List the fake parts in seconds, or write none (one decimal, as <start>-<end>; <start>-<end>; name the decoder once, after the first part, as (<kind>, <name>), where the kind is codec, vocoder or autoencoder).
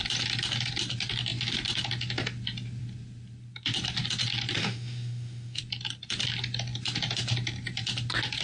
4.6-5.6 (autoencoder, DAC-VAE)